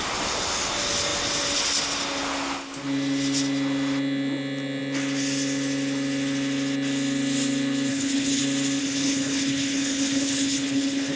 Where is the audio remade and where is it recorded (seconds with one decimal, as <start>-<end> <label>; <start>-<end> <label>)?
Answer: 0.0-7.9 recorded; 7.9-8.4 remade; 8.4-8.8 recorded; 8.8-11.2 remade